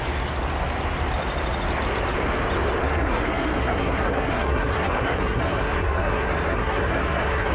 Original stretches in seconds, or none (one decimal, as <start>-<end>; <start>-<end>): 0.0-2.8